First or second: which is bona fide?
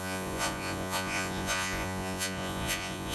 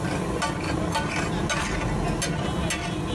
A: second